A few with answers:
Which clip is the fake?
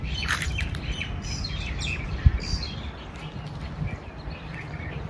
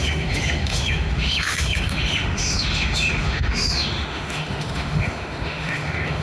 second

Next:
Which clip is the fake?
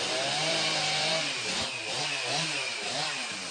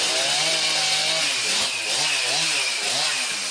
first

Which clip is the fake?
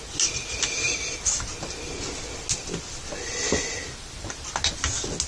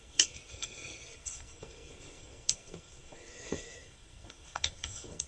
second